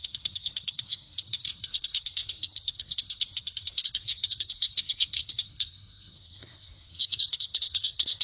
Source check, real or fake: fake